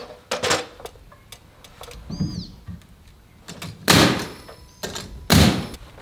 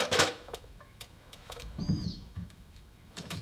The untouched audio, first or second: first